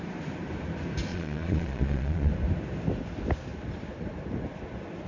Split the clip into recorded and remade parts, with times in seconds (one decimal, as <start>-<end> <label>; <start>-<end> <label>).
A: 0.0-1.1 recorded; 1.1-2.3 remade; 2.3-5.1 recorded

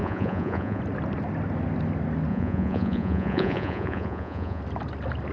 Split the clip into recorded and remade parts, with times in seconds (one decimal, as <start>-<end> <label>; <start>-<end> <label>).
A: 0.0-0.8 remade; 0.8-2.3 recorded; 2.3-4.6 remade; 4.6-5.3 recorded

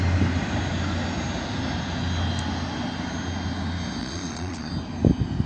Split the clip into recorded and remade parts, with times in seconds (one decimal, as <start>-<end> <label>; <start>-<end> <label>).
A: 0.0-4.0 recorded; 4.0-4.7 remade; 4.7-5.5 recorded

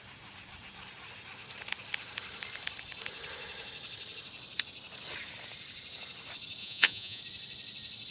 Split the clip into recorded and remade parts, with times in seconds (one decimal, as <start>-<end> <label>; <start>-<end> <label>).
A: 0.0-6.6 recorded; 6.6-7.2 remade; 7.2-8.1 recorded

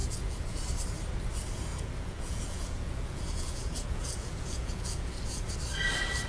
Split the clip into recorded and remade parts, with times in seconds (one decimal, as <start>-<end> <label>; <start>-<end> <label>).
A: 0.0-0.6 remade; 0.6-1.7 recorded; 1.7-5.5 remade; 5.5-6.3 recorded

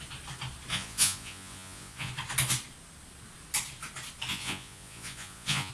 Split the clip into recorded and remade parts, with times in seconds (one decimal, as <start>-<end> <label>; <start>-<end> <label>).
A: 0.0-0.7 recorded; 0.7-2.1 remade; 2.1-4.3 recorded; 4.3-5.7 remade

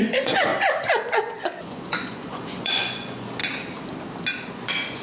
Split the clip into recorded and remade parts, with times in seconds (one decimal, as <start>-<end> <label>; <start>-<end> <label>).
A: 0.0-0.5 remade; 0.5-1.1 recorded; 1.1-3.4 remade; 3.4-4.5 recorded; 4.5-5.0 remade